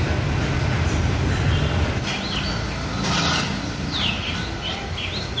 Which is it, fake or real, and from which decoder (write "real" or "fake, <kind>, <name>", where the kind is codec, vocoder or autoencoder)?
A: real